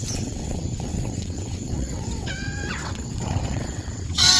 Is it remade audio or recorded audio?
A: remade